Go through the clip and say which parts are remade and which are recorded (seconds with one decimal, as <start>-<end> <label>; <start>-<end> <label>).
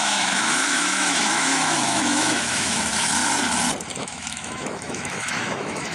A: 0.0-3.2 remade; 3.2-4.0 recorded; 4.0-5.9 remade